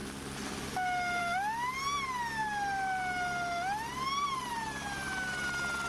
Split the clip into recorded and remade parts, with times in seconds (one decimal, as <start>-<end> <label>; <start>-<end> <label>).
0.0-5.9 recorded